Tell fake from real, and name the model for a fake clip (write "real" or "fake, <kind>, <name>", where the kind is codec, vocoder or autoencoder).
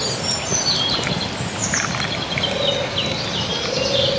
real